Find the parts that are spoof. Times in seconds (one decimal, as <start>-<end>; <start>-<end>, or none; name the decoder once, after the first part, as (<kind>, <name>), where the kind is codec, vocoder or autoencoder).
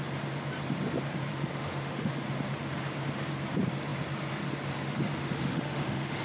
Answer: 1.3-2.1 (autoencoder, DAC-VAE); 5.2-6.2